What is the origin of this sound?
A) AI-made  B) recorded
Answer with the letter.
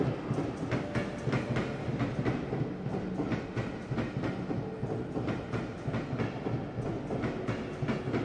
B